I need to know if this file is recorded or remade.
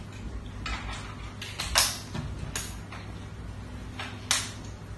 recorded